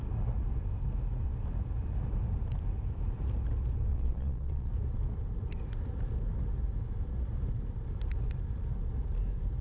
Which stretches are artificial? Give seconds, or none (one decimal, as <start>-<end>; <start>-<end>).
3.9-4.7